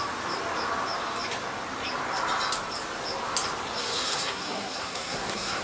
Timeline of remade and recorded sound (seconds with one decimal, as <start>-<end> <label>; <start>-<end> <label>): 0.0-3.8 recorded; 3.8-5.6 remade